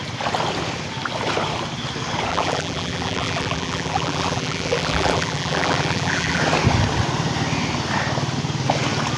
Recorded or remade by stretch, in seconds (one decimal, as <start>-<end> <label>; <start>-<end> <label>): 0.0-2.3 recorded; 2.3-6.4 remade; 6.4-9.2 recorded